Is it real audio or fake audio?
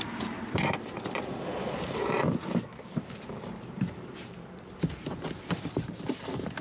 fake